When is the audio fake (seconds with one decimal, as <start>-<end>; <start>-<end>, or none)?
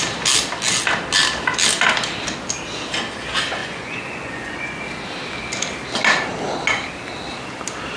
3.6-4.8